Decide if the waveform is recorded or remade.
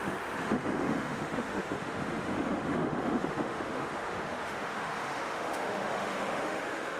remade